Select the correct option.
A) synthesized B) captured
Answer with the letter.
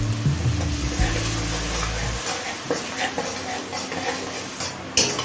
B